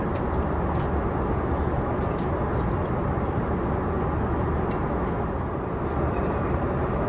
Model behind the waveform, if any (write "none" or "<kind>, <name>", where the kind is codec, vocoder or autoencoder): none